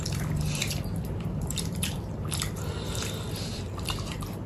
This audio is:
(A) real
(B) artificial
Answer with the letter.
B